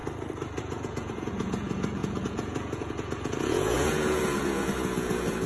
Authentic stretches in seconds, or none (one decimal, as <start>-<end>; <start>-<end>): 0.0-0.6